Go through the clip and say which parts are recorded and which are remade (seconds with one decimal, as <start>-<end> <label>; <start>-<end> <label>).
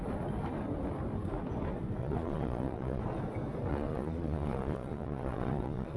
0.0-2.0 recorded; 2.0-3.0 remade; 3.0-3.7 recorded; 3.7-6.0 remade